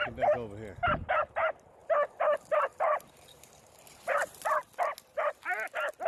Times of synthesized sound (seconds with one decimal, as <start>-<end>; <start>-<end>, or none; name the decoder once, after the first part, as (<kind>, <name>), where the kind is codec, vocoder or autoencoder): none